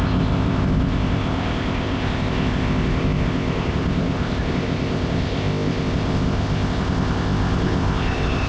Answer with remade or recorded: remade